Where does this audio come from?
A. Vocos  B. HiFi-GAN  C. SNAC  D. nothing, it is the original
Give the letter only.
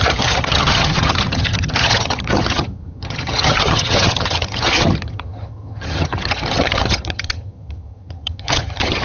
B